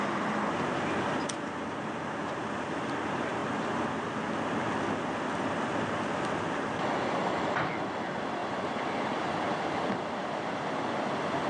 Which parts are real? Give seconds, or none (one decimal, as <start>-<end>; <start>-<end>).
0.0-11.5